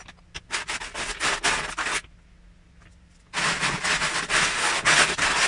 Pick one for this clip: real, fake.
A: real